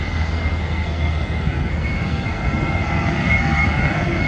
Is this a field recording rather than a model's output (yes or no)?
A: no